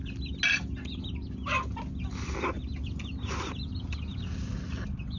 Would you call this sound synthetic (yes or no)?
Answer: no